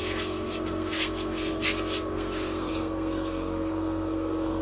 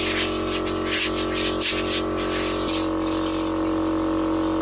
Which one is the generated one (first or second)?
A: first